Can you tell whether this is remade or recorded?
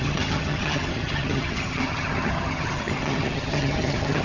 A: remade